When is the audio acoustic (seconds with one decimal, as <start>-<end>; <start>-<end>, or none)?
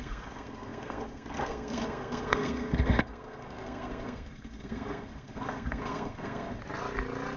6.6-7.4